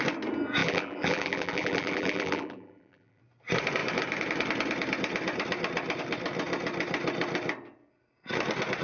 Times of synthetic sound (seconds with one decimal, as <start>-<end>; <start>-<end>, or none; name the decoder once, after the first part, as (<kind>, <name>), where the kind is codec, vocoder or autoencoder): 0.6-3.2 (vocoder, BigVGAN v2)